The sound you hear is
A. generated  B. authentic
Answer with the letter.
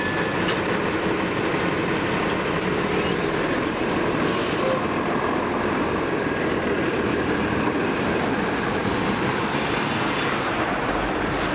B